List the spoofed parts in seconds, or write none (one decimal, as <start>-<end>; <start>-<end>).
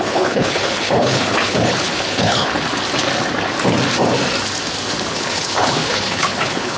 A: 0.0-2.5; 5.1-6.8